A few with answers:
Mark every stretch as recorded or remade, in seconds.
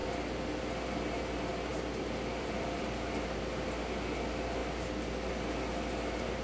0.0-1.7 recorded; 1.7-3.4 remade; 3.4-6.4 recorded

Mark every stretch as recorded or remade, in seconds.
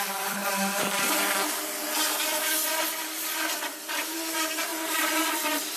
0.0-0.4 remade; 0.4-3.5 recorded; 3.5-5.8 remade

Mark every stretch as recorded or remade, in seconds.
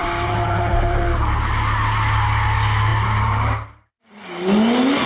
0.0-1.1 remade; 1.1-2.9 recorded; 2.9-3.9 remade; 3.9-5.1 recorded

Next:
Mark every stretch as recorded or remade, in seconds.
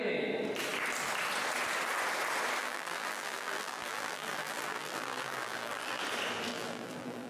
0.0-2.6 recorded; 2.6-6.0 remade; 6.0-6.5 recorded; 6.5-7.3 remade